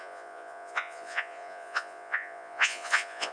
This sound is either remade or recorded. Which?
remade